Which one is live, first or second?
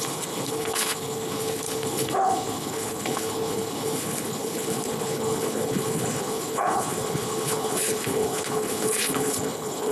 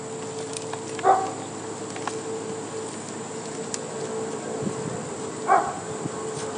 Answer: second